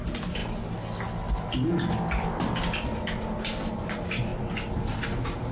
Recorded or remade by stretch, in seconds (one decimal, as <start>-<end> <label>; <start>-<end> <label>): 0.0-0.4 remade; 0.4-3.7 recorded; 3.7-4.3 remade; 4.3-4.9 recorded; 4.9-5.5 remade